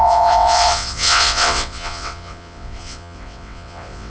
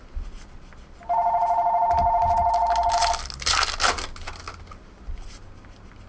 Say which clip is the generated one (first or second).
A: first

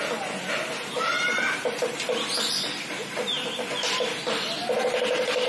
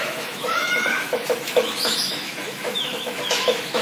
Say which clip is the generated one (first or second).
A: second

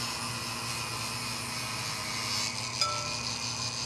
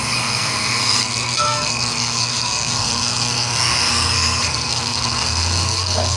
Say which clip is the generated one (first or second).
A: second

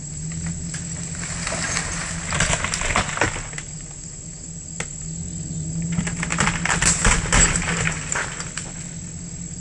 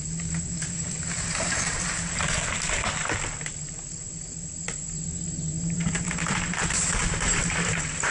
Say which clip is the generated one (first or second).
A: second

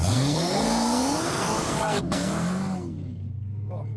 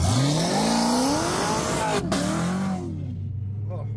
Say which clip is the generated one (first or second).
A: first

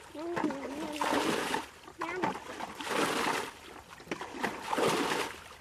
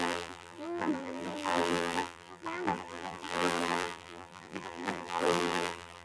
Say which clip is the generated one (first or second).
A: second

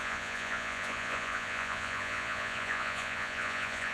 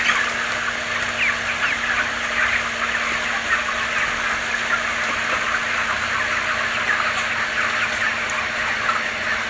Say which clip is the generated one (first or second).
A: first